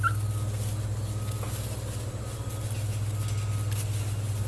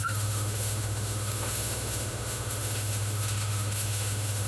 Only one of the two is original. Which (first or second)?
first